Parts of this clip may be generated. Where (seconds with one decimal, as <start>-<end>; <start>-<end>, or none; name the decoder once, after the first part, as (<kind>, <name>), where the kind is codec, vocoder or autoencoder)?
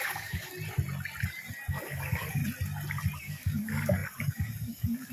0.0-0.5 (codec, DAC); 1.7-2.4; 3.2-5.1